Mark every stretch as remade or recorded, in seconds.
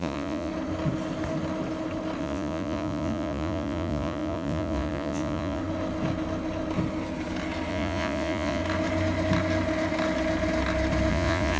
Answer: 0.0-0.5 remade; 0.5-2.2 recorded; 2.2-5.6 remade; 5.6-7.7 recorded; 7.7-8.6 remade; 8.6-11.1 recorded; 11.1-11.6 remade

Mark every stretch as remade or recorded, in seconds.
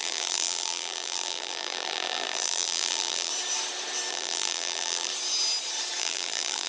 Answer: 0.0-3.3 remade; 3.3-4.1 recorded; 4.1-5.1 remade; 5.1-6.0 recorded; 6.0-6.7 remade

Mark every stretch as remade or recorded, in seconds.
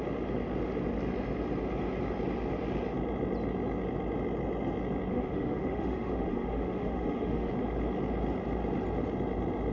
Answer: 0.0-5.1 recorded; 5.1-7.5 remade; 7.5-9.7 recorded